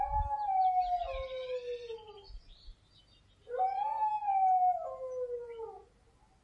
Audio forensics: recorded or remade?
recorded